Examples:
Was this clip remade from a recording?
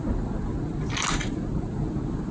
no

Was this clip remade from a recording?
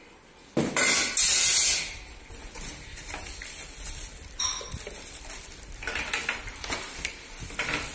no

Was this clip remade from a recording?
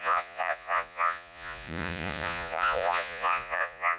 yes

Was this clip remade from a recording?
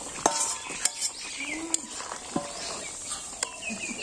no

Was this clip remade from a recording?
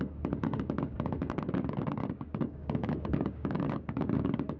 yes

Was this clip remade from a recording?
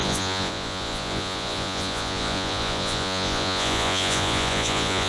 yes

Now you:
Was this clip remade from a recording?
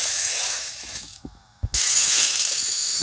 yes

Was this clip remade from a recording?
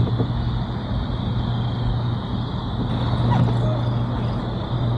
no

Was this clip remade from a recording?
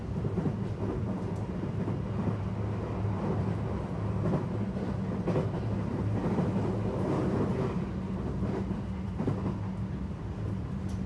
no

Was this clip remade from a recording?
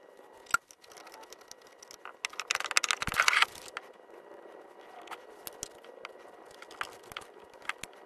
no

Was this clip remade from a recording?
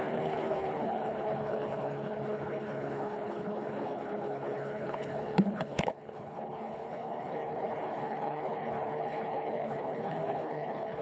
yes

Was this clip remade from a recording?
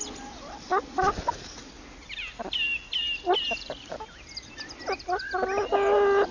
no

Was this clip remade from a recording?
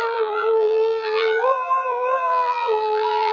yes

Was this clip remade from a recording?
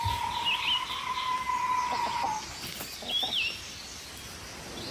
no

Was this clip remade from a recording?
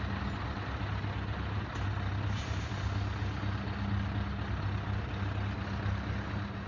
no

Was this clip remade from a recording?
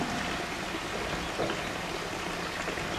no